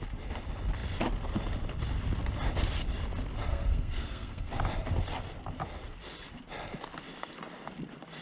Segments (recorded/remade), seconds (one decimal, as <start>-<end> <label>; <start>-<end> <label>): 0.0-3.5 recorded; 3.5-4.5 remade; 4.5-8.2 recorded

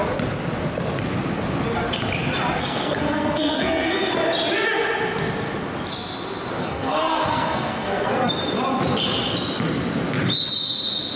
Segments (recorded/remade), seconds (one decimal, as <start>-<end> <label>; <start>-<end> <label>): 0.0-2.6 recorded; 2.6-4.1 remade; 4.1-6.6 recorded; 6.6-8.3 remade; 8.3-11.2 recorded

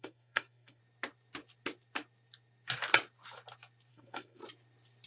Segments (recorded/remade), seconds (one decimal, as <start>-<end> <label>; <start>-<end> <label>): 0.0-0.8 remade; 0.8-3.9 recorded; 3.9-4.4 remade; 4.4-5.1 recorded

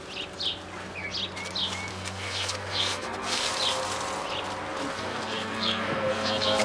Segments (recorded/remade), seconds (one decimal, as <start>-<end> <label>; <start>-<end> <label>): 0.0-1.9 recorded; 1.9-3.5 remade; 3.5-4.9 recorded; 4.9-6.6 remade

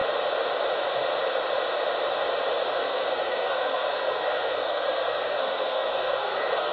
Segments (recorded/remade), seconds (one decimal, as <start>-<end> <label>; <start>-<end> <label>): 0.0-2.8 recorded; 2.8-6.7 remade

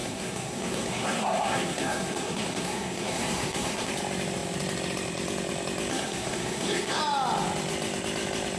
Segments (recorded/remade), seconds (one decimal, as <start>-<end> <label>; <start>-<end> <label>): 0.0-3.9 remade; 3.9-5.9 recorded; 5.9-7.0 remade; 7.0-8.6 recorded

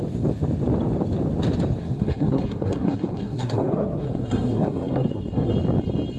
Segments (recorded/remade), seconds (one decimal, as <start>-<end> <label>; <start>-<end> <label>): 0.0-1.8 recorded; 1.8-5.5 remade; 5.5-6.2 recorded